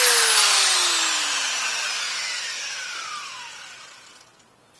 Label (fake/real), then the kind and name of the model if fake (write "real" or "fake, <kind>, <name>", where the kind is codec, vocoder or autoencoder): real